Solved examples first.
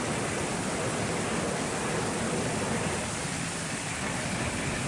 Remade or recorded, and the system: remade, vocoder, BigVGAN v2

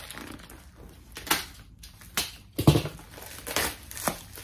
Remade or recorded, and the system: recorded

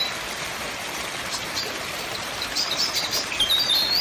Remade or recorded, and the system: remade, vocoder, BigVGAN v2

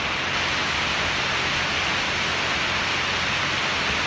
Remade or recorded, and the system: recorded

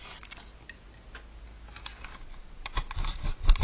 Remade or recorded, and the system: recorded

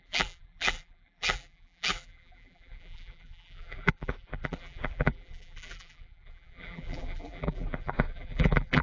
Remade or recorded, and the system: remade, vocoder, BigVGAN v2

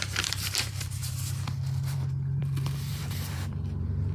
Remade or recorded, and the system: remade, vocoder, BigVGAN v2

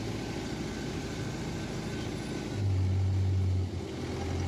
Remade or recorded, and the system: recorded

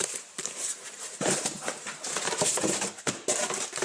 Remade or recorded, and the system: remade, vocoder, BigVGAN v2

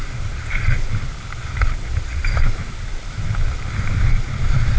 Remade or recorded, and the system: recorded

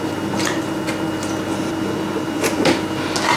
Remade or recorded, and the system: recorded